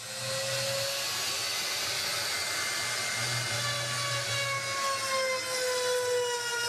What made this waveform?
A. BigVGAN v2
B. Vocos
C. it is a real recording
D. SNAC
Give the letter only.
C